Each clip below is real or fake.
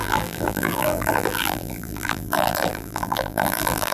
fake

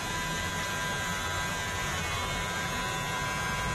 real